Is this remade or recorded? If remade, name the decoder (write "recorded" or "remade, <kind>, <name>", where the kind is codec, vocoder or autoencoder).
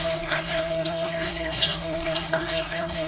remade, codec, SNAC